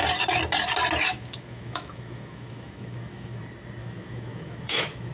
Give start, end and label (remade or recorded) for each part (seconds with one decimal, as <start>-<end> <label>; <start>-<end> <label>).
0.0-1.1 recorded; 1.1-3.4 remade; 3.4-3.8 recorded; 3.8-5.1 remade